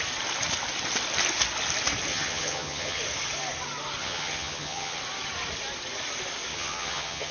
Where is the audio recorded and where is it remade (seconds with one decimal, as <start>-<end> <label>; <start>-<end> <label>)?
0.0-2.1 recorded; 2.1-3.0 remade; 3.0-4.0 recorded; 4.0-5.0 remade; 5.0-6.5 recorded; 6.5-7.3 remade